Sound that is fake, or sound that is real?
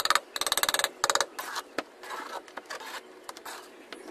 real